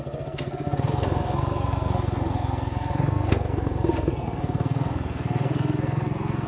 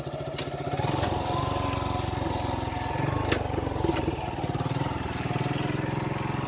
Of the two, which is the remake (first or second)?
first